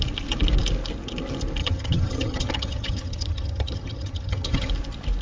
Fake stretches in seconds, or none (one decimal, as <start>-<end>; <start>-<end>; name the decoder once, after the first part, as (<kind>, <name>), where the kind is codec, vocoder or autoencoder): 1.6-4.7 (vocoder, HiFi-GAN)